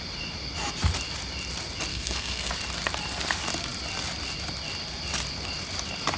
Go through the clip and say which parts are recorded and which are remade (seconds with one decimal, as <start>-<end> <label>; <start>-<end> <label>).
0.0-1.9 recorded; 1.9-2.5 remade; 2.5-6.2 recorded